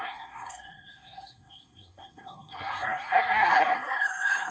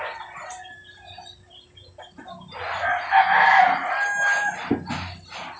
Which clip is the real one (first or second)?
second